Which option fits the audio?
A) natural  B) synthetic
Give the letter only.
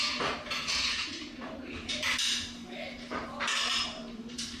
B